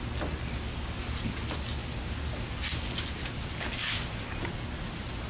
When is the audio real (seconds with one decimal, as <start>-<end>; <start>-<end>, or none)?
0.0-5.3